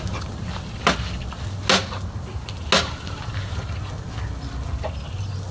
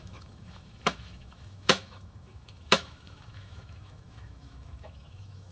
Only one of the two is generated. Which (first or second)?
second